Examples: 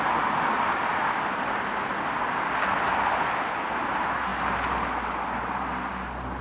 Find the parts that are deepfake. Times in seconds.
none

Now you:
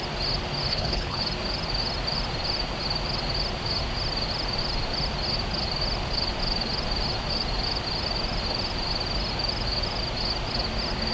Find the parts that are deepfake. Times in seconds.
0.7-1.2

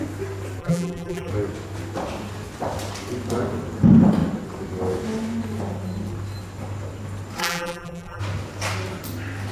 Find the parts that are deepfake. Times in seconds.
0.6-1.3; 7.4-8.2

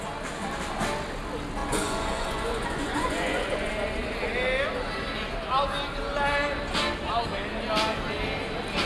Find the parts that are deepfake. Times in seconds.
1.6-3.7

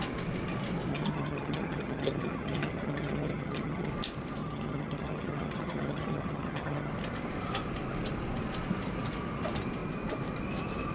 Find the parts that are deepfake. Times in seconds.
0.9-3.9; 4.4-6.9

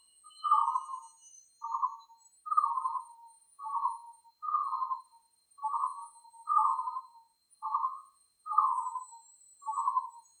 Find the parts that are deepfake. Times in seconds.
0.0-0.6; 3.0-10.4

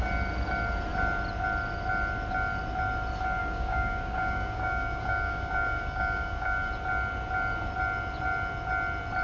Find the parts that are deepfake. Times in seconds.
3.4-6.7

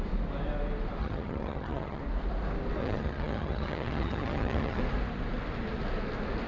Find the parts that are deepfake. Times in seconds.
1.0-2.0; 2.8-4.8